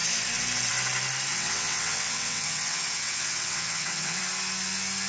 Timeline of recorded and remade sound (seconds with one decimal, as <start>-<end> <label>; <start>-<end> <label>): 0.0-1.3 recorded; 1.3-4.2 remade; 4.2-5.1 recorded